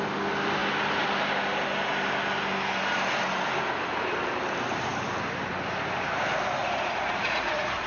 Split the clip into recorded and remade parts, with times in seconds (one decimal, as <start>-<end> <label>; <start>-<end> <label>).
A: 0.0-6.6 recorded; 6.6-7.9 remade